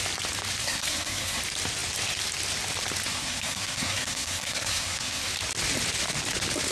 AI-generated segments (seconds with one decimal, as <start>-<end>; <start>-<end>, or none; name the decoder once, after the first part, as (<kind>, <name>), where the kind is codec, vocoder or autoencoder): 0.6-1.4 (codec, SNAC); 3.1-5.3

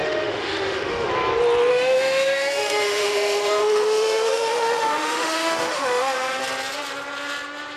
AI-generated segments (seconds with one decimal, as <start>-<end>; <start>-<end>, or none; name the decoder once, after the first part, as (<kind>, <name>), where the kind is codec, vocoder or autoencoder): 0.0-1.1 (autoencoder, DAC-VAE); 1.7-6.4

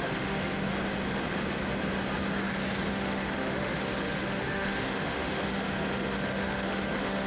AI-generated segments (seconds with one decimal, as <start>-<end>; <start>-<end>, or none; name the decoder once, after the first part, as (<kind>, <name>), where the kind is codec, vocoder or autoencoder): 0.0-0.7 (autoencoder, DAC-VAE); 2.9-7.3

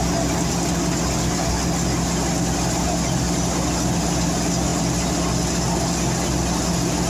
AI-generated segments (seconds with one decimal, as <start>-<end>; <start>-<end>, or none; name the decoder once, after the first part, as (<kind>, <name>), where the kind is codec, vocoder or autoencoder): none

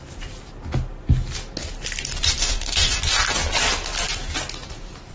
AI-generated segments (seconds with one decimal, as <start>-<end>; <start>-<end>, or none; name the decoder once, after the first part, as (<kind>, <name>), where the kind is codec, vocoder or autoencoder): 2.4-3.0 (autoencoder, DAC-VAE)